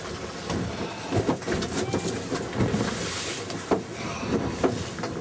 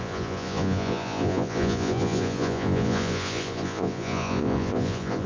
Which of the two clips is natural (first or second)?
first